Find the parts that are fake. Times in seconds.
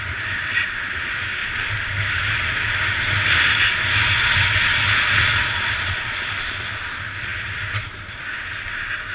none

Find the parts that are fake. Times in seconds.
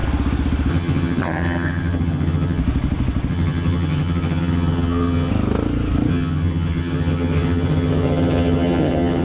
0.7-2.6 (vocoder, HiFi-GAN); 3.3-5.3; 6.1-9.2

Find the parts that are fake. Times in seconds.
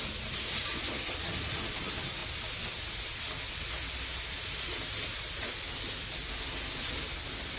none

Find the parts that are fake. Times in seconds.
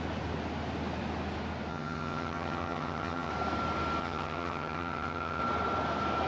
1.7-3.3 (vocoder, HiFi-GAN); 4.0-5.4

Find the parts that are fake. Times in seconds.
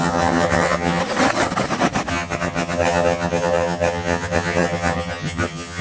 0.0-1.0 (vocoder, HiFi-GAN); 2.1-5.8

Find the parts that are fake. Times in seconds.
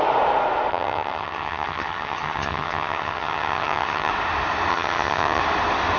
0.7-4.1 (vocoder, HiFi-GAN); 4.7-5.4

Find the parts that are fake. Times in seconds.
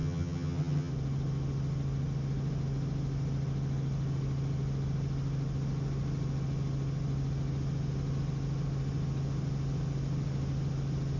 0.0-0.9 (vocoder, HiFi-GAN)